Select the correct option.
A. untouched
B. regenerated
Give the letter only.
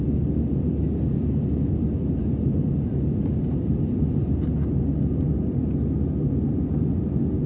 A